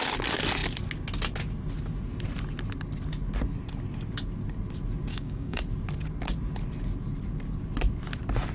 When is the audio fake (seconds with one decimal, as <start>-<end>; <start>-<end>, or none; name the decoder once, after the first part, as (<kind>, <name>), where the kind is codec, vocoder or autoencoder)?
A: 5.1-5.6 (codec, DAC)